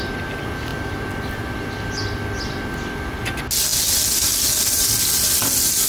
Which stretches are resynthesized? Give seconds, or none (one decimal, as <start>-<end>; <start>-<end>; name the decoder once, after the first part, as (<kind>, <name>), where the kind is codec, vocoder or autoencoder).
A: none